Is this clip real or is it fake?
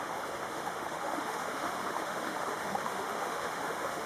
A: fake